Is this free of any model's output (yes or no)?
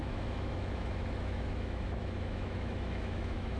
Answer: no